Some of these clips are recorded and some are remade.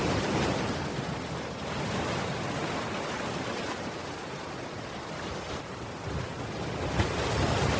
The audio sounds recorded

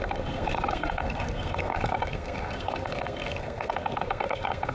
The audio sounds remade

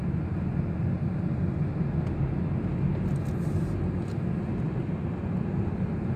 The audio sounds recorded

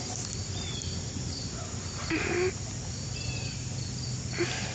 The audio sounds remade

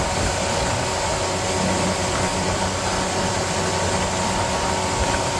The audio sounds recorded